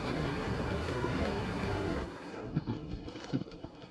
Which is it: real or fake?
fake